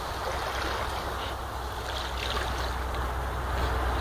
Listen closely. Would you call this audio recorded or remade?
recorded